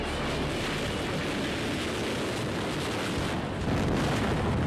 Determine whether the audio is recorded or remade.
recorded